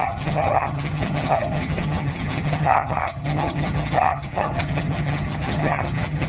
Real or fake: fake